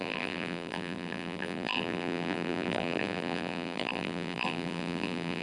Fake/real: fake